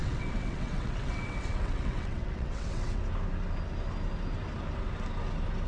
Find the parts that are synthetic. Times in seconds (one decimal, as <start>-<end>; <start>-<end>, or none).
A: 0.0-3.0